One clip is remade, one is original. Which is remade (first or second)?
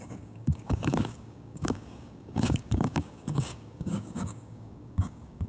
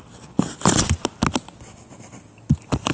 first